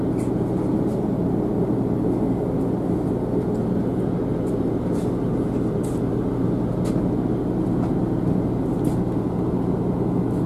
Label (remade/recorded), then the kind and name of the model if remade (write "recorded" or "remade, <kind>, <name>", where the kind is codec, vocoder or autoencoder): recorded